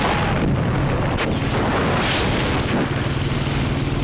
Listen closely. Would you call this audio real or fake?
real